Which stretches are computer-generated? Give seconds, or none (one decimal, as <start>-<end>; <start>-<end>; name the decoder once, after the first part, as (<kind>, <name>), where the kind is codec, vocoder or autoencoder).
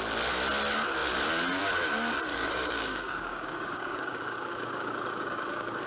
2.3-5.9 (codec, DAC)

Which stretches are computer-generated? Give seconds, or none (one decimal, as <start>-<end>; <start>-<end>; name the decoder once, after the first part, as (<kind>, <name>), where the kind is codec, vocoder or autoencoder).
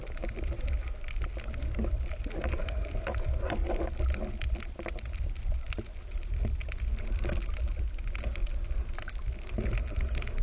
none